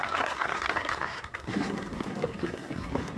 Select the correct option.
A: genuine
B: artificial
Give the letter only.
B